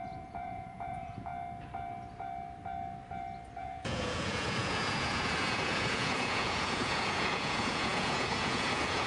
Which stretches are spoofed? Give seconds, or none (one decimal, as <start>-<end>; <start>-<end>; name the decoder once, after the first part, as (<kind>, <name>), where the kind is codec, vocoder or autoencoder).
0.0-1.3 (vocoder, Vocos); 3.6-9.1